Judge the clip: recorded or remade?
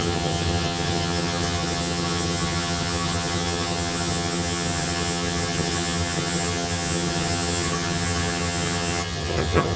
remade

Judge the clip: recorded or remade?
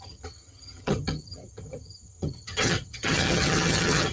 remade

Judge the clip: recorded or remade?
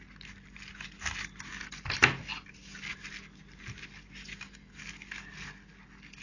recorded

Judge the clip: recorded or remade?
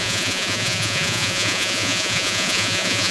remade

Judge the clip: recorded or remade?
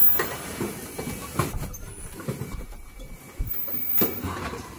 remade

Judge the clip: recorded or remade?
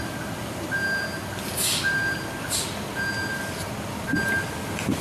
recorded